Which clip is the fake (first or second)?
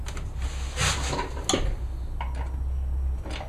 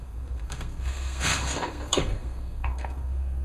second